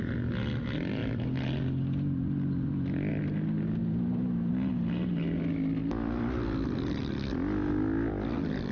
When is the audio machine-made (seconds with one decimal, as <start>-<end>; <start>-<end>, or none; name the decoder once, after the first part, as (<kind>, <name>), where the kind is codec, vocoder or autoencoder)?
1.0-3.1 (vocoder, BigVGAN v2)